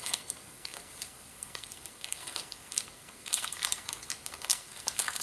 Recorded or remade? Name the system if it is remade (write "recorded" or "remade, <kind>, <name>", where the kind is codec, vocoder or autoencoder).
remade, codec, SNAC